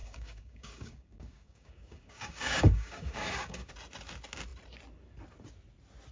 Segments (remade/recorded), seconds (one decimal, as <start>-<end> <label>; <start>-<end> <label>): 0.0-3.7 remade; 3.7-6.1 recorded